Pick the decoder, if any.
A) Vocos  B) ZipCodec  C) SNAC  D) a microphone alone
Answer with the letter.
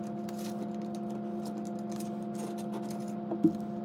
D